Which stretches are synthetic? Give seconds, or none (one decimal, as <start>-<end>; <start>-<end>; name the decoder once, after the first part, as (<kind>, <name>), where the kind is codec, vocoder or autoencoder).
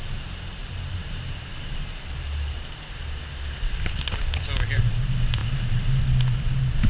0.6-3.1 (vocoder, BigVGAN v2); 5.4-6.0